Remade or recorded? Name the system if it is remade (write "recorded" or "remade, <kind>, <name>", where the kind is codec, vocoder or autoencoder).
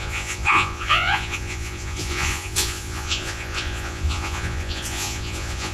remade, vocoder, Vocos